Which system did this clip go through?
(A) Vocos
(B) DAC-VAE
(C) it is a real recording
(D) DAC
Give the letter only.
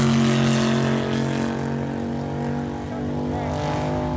C